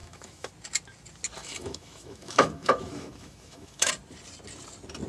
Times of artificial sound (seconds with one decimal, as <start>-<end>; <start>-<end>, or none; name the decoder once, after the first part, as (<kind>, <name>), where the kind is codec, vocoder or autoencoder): 0.0-0.5 (autoencoder, DAC-VAE); 1.4-3.9